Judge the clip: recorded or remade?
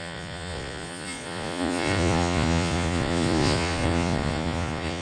remade